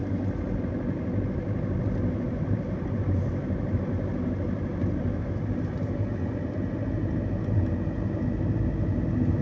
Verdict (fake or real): real